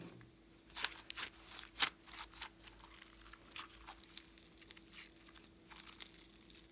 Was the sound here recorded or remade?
recorded